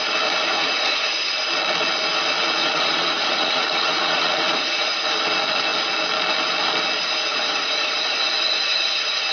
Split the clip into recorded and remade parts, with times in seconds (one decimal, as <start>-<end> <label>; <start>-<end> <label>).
0.0-0.5 recorded; 0.5-1.2 remade; 1.2-2.6 recorded; 2.6-5.0 remade; 5.0-7.3 recorded; 7.3-8.3 remade; 8.3-9.3 recorded